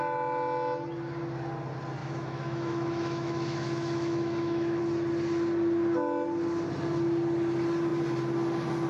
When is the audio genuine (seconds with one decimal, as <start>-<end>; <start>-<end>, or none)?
0.0-2.0; 4.8-8.9